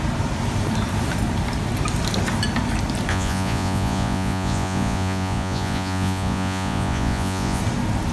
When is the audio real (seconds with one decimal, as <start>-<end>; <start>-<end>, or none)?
0.0-3.1; 7.6-8.1